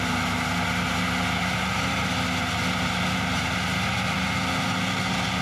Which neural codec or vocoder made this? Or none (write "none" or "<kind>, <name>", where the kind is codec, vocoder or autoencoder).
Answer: none